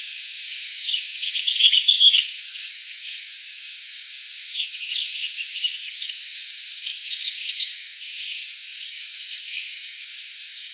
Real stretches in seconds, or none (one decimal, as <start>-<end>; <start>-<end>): none